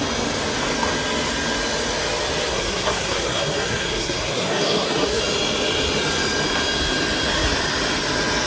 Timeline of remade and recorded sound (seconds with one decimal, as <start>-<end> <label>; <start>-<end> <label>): 0.0-2.5 recorded; 2.5-5.2 remade; 5.2-8.5 recorded